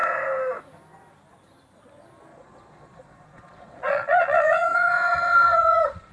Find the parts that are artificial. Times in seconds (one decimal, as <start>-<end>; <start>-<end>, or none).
2.3-6.1